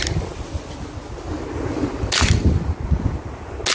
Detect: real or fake real